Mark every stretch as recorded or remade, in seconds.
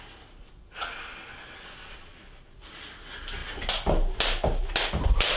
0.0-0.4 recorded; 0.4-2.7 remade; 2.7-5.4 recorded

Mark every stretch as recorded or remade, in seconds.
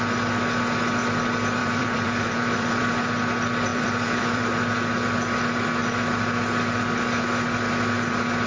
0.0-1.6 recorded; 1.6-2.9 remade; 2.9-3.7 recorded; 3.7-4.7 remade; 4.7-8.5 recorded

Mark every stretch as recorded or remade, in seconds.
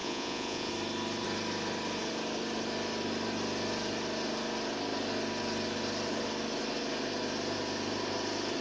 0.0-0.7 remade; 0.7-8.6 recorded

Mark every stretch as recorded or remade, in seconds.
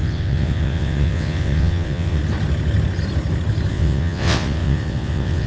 0.0-2.2 remade; 2.2-3.7 recorded; 3.7-5.5 remade